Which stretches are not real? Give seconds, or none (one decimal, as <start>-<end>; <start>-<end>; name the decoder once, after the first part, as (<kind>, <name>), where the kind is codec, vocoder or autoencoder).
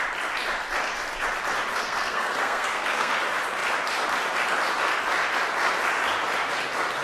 1.7-3.1 (codec, SNAC)